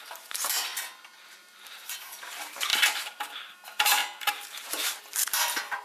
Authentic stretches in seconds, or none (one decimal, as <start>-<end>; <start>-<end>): 0.7-1.4